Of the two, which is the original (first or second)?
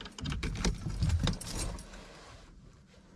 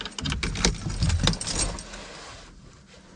second